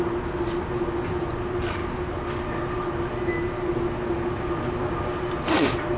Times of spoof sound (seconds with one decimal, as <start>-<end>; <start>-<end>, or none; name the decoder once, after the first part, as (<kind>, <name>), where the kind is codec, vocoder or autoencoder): none